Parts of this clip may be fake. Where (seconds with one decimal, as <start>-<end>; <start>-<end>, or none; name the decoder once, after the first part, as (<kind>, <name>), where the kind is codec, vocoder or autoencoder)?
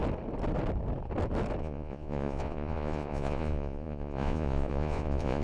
1.6-5.4 (vocoder, Vocos)